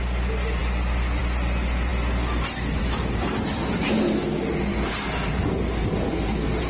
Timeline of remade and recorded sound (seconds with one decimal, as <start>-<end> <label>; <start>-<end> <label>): 0.0-4.7 recorded; 4.7-5.6 remade; 5.6-6.7 recorded